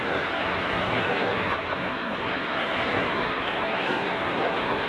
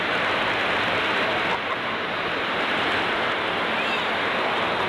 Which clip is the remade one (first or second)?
first